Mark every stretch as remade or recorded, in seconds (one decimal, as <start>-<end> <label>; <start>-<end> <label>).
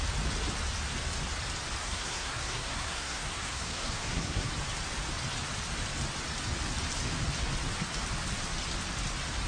0.0-1.8 recorded; 1.8-4.5 remade; 4.5-9.5 recorded